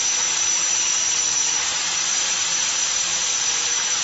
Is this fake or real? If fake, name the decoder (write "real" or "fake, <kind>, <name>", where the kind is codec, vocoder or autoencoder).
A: real